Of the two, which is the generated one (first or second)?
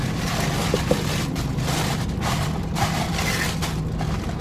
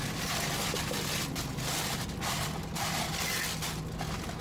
first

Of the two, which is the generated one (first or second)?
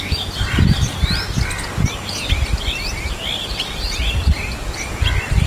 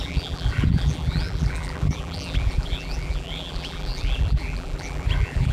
second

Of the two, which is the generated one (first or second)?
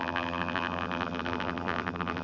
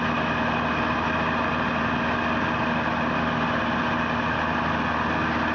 first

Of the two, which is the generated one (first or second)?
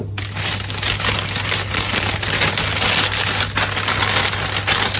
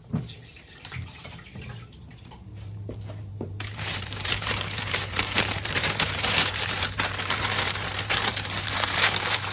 second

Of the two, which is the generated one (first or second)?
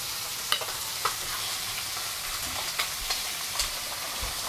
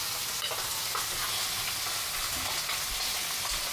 first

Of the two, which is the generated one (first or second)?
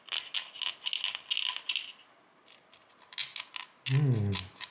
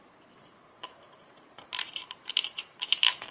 second